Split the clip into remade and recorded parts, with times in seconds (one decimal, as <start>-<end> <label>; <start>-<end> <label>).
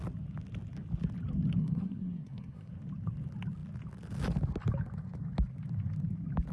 0.0-1.6 recorded; 1.6-2.7 remade; 2.7-6.5 recorded